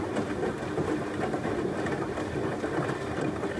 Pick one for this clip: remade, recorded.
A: recorded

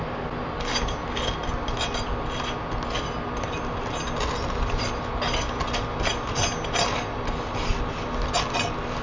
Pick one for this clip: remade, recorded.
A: recorded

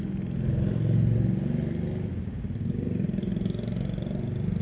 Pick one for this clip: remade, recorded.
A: recorded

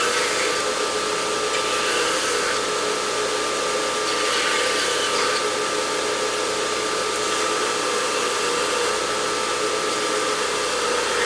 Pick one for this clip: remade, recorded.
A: recorded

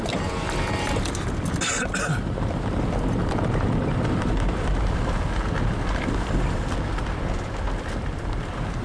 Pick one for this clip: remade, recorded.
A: recorded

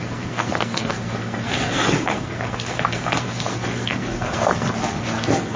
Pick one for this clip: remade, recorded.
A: remade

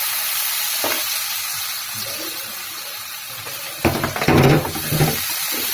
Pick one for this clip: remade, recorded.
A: recorded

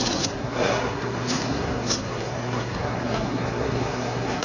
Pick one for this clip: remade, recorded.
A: remade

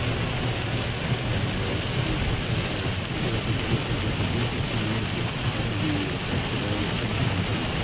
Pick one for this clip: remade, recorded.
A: recorded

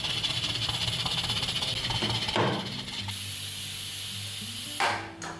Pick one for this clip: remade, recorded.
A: recorded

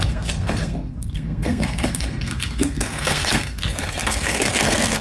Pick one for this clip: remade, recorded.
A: remade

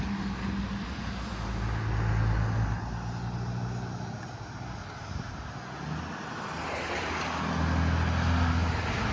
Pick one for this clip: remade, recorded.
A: recorded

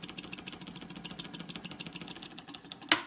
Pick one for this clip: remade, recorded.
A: recorded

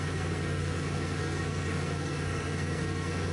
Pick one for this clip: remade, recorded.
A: remade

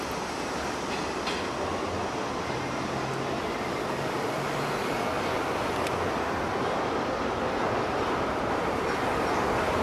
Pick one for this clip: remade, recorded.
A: recorded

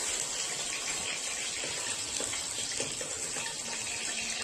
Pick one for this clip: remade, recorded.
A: recorded